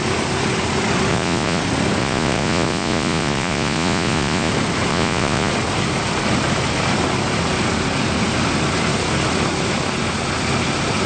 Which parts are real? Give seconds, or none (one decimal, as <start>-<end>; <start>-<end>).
0.0-1.1; 1.6-2.0; 4.5-4.9; 5.5-11.1